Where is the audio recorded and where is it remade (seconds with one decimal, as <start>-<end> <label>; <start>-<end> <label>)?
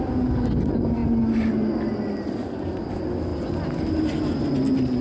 0.0-5.0 recorded